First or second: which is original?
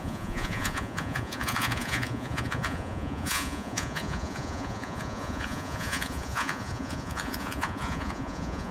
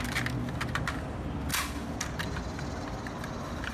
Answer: second